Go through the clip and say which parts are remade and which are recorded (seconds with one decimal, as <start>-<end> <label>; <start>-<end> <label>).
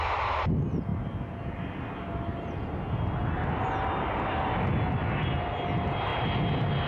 0.0-6.9 recorded